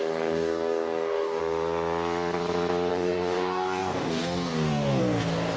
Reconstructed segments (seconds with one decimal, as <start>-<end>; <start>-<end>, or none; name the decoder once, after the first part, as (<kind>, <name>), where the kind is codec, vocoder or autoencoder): 0.0-1.4 (codec, DAC); 2.9-5.6